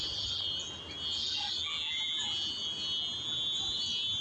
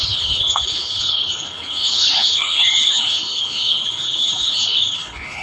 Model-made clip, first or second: second